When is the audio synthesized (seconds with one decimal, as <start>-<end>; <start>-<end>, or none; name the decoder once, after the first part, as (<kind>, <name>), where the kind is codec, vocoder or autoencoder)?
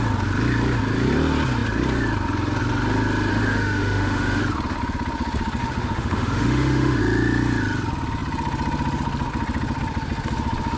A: 3.3-4.4 (autoencoder, DAC-VAE); 5.6-7.0